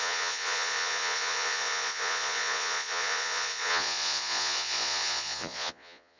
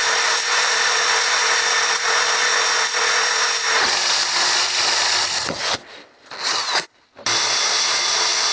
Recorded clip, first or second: second